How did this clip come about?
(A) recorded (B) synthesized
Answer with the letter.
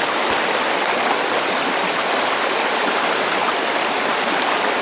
A